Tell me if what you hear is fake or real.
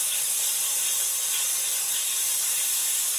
fake